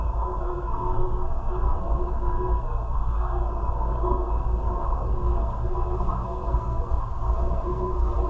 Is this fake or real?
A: fake